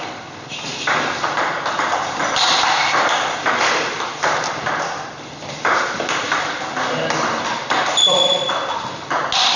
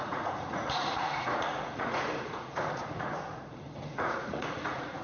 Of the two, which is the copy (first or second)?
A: second